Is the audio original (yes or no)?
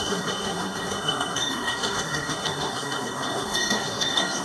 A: no